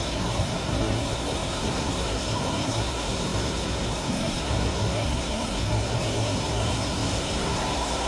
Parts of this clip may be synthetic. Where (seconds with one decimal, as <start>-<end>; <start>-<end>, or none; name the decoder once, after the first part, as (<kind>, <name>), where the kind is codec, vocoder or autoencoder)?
0.0-8.1 (codec, SNAC)